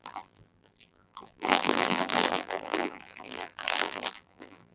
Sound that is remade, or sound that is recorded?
remade